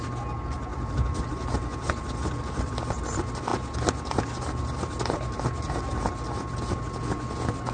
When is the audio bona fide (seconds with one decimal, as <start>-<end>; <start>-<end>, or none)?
0.0-0.7; 3.0-7.7